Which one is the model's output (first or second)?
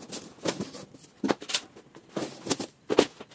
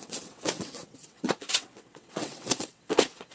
second